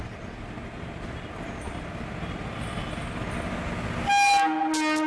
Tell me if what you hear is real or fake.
real